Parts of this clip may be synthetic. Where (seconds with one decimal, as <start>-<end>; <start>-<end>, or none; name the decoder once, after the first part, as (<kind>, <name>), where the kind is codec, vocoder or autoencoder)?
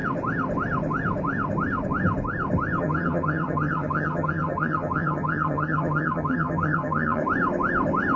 2.8-7.2 (vocoder, HiFi-GAN)